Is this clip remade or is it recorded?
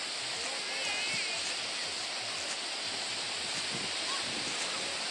recorded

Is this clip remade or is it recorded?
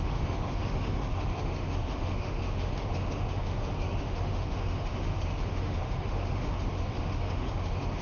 remade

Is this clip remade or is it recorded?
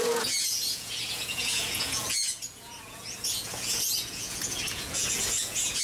remade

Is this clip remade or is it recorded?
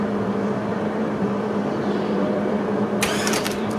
remade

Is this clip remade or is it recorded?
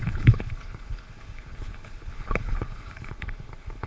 remade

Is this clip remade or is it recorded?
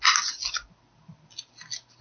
recorded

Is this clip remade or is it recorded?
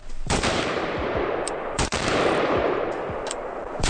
remade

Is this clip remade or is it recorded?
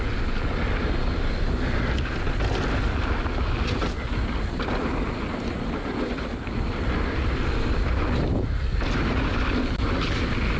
recorded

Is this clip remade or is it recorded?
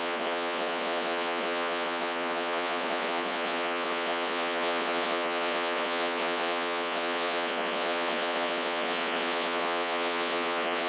remade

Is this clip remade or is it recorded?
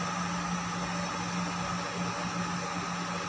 recorded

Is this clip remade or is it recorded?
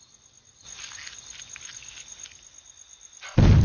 recorded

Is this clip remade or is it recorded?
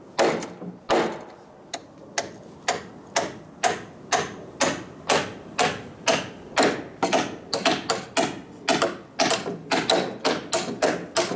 recorded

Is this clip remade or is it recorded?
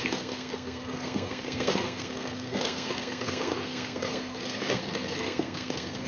remade